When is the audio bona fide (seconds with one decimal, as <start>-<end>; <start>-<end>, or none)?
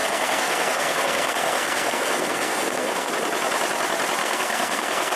3.1-4.2